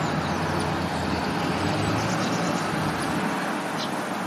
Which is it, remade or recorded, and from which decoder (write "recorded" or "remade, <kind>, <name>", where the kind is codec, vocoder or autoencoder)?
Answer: recorded